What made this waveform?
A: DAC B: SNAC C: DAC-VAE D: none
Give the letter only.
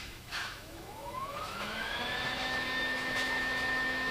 C